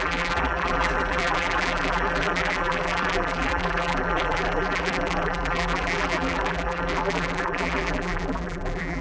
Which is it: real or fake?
fake